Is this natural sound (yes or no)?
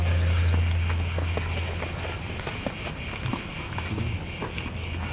yes